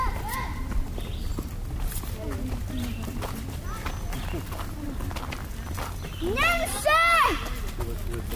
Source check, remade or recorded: recorded